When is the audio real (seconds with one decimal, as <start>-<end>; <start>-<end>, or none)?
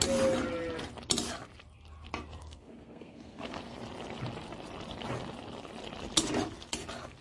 0.0-2.4; 3.8-7.2